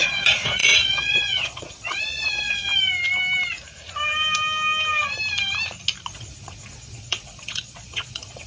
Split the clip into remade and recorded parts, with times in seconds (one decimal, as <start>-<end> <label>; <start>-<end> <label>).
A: 0.0-2.7 remade; 2.7-6.1 recorded; 6.1-8.5 remade